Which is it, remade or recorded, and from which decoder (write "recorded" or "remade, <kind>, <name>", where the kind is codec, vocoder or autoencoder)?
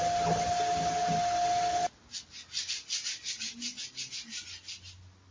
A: recorded